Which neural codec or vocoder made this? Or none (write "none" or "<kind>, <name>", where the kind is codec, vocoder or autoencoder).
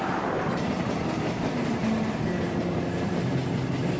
vocoder, BigVGAN v2